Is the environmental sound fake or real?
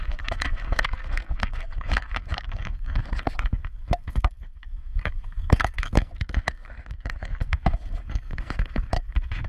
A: fake